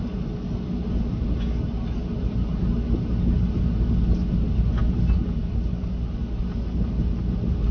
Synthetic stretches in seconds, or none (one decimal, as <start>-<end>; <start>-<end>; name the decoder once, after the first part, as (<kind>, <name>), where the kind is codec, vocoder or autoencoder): none